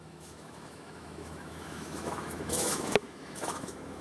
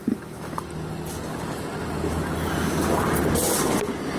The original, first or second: second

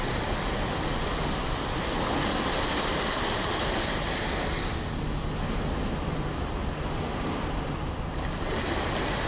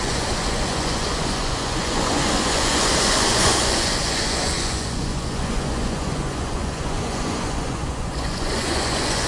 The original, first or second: first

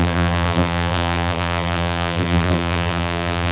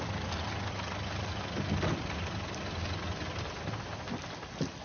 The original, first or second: second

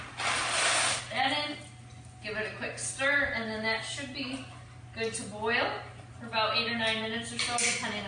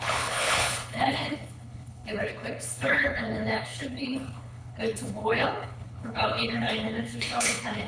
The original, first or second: first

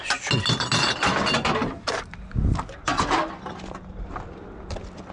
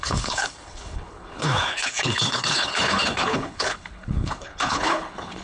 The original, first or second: first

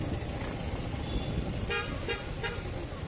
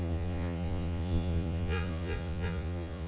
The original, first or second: first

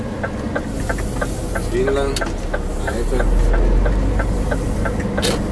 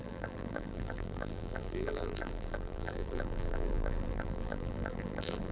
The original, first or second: first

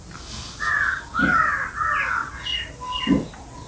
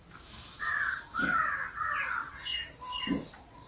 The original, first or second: first